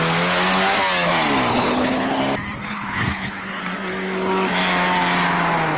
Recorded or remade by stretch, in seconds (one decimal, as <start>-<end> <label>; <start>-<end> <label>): 0.0-1.5 recorded; 1.5-2.2 remade; 2.2-2.7 recorded; 2.7-3.6 remade; 3.6-5.8 recorded